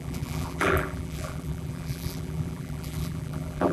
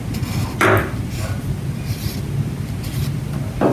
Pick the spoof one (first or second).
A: first